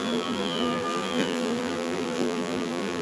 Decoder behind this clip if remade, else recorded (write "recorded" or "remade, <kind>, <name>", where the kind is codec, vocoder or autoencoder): remade, vocoder, BigVGAN v2